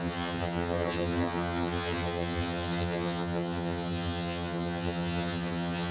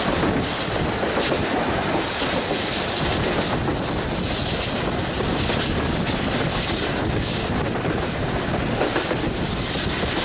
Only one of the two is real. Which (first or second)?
second